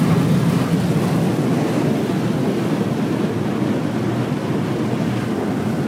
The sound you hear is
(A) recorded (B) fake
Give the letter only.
A